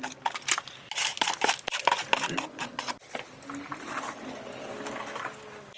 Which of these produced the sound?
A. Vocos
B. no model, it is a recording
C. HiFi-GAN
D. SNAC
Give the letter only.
B